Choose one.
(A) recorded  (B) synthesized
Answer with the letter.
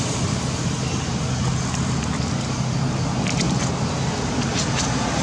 A